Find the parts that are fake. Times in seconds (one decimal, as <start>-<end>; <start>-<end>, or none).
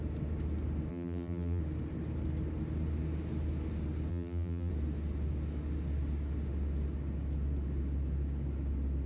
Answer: 0.9-1.6; 4.1-4.7